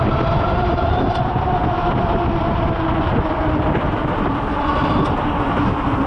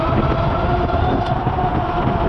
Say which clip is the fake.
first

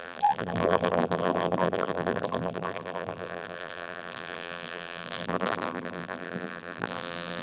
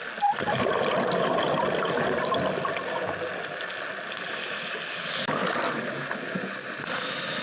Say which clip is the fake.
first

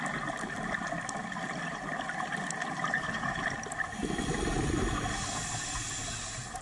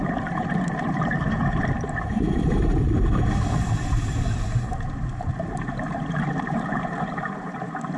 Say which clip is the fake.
second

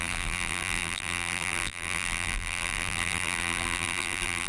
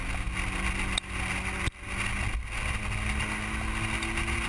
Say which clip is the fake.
first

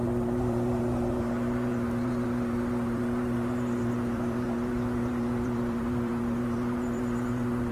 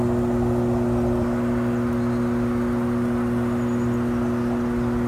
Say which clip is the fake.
first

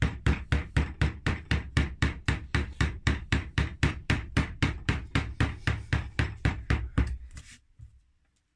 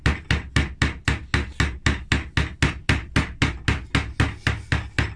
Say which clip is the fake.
first